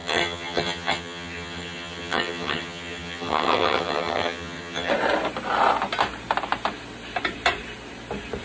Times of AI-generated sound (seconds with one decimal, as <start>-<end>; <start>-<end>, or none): 0.0-4.9